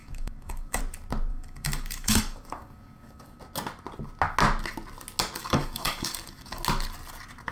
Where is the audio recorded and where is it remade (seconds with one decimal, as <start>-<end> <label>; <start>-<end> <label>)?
0.0-0.8 remade; 0.8-1.3 recorded; 1.3-3.4 remade; 3.4-5.4 recorded; 5.4-6.6 remade; 6.6-7.5 recorded